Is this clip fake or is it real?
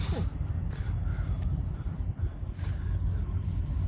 real